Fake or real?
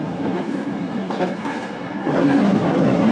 fake